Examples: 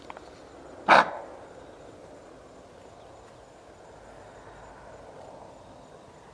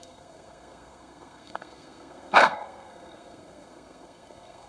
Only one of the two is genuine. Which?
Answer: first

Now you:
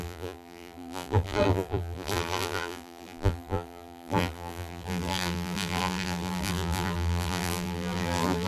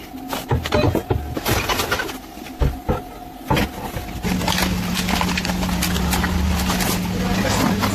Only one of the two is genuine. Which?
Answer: second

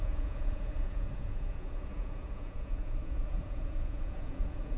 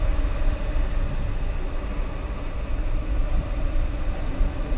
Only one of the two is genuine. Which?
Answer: second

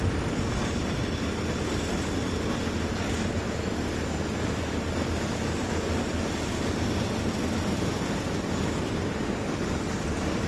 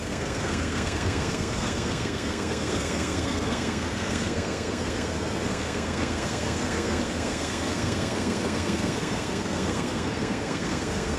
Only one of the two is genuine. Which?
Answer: first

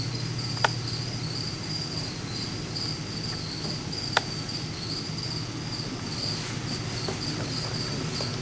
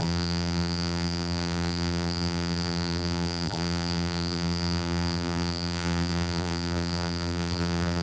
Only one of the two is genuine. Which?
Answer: first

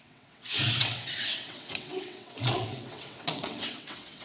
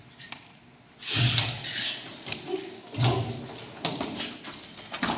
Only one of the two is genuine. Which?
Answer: second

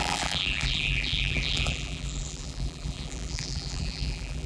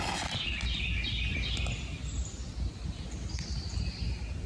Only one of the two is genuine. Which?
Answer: second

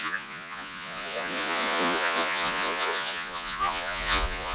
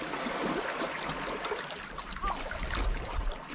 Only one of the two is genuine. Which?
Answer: second